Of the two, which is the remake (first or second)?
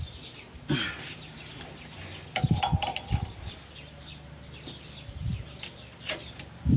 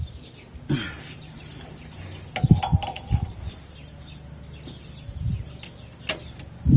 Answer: second